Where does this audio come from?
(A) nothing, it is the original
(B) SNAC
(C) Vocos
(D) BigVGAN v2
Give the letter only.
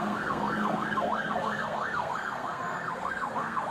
B